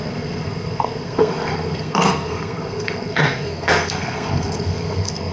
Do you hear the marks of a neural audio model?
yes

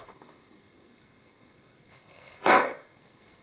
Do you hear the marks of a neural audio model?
yes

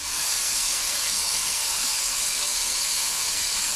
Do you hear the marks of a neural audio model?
yes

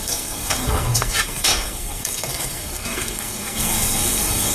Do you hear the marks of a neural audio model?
yes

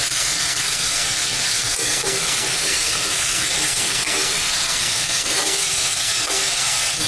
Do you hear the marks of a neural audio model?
yes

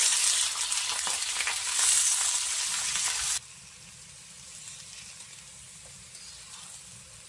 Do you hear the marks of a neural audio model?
no